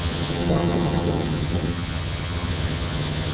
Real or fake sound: fake